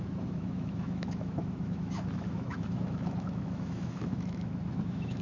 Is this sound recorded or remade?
remade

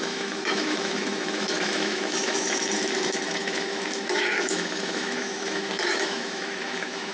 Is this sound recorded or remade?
remade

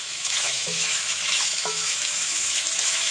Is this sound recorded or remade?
remade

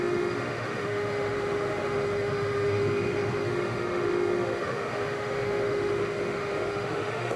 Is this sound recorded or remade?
remade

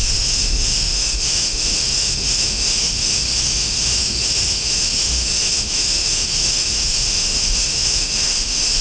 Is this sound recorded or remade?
remade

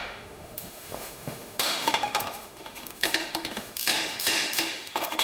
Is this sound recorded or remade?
remade